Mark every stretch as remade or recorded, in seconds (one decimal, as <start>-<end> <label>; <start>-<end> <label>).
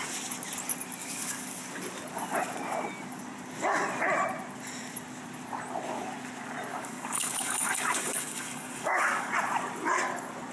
0.0-1.0 recorded; 1.0-1.6 remade; 1.6-6.7 recorded; 6.7-9.3 remade; 9.3-10.5 recorded